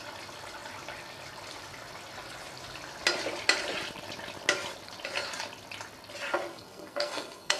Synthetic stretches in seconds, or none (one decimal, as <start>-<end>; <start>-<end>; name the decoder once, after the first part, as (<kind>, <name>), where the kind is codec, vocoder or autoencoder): 6.5-7.6 (codec, SNAC)